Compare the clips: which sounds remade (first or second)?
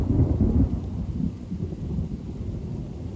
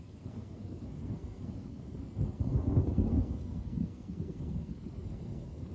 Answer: second